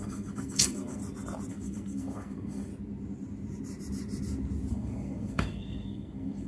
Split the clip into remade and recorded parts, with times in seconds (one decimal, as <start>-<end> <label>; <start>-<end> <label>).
0.0-1.0 remade; 1.0-1.5 recorded; 1.5-2.7 remade; 2.7-4.7 recorded; 4.7-6.5 remade

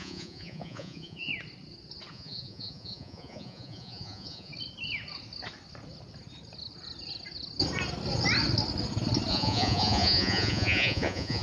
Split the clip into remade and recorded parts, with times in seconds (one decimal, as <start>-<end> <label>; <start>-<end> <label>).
0.0-1.3 remade; 1.3-2.1 recorded; 2.1-4.5 remade; 4.5-9.3 recorded; 9.3-11.4 remade

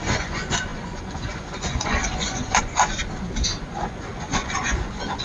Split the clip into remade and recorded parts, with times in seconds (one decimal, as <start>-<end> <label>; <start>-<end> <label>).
0.0-3.0 remade; 3.0-3.6 recorded; 3.6-5.2 remade

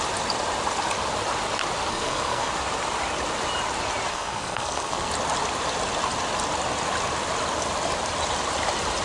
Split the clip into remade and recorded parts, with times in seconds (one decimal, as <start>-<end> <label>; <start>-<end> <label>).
0.0-1.9 recorded; 1.9-2.5 remade; 2.5-4.1 recorded; 4.1-5.1 remade; 5.1-9.0 recorded